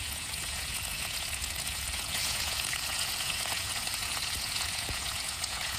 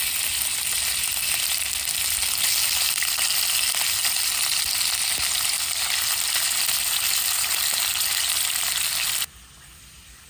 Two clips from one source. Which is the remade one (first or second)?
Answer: first